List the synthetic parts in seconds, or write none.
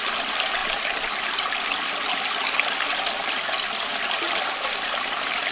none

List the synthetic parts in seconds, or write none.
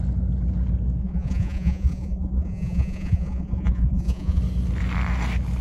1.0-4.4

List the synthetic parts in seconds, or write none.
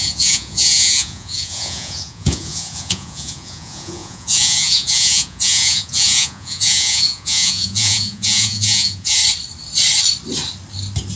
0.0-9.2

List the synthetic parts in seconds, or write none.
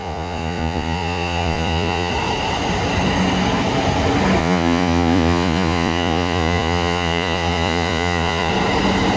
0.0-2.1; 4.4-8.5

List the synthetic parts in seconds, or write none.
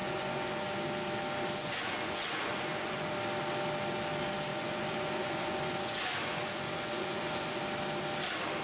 0.0-0.7; 1.6-3.1; 4.5-7.6